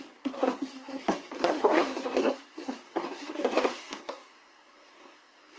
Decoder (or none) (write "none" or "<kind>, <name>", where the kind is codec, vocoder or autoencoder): codec, SNAC